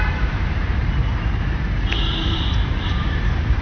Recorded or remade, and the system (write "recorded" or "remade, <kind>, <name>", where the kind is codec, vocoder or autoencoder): remade, vocoder, BigVGAN v2